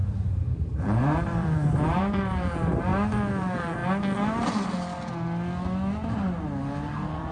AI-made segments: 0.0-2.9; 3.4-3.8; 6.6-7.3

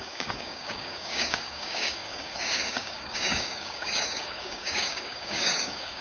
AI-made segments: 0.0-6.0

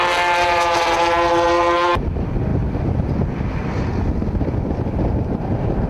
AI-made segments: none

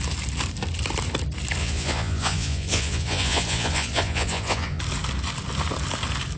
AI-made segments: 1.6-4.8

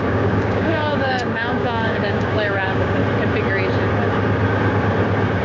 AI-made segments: 0.0-3.0

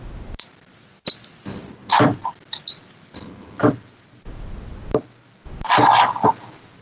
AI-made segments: none

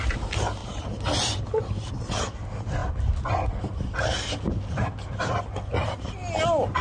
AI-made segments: none

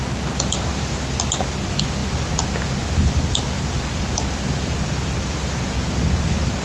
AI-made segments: 0.7-1.2